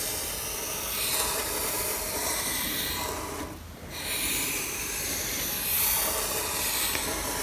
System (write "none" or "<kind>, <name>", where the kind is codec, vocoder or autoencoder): none